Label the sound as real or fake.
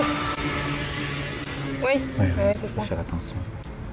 real